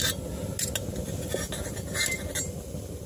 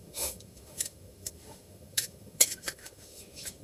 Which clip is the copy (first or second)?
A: second